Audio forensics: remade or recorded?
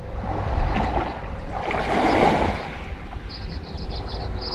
recorded